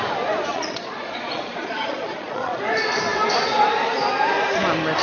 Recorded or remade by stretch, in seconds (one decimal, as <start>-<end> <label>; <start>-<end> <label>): 0.0-0.5 recorded; 0.5-2.6 remade; 2.6-5.0 recorded